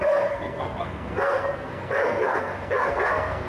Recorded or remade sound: remade